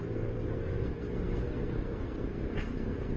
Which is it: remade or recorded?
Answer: remade